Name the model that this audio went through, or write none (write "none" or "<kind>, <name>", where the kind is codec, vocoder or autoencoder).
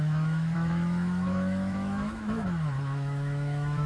autoencoder, DAC-VAE